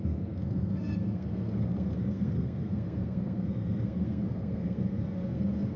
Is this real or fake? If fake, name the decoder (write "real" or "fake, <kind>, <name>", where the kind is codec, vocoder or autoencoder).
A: fake, codec, SNAC